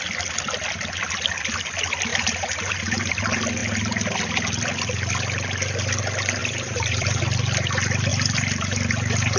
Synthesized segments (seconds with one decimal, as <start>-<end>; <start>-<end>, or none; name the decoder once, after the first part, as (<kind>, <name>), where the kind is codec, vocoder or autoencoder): 2.1-3.1 (vocoder, BigVGAN v2); 6.4-7.2; 8.1-9.4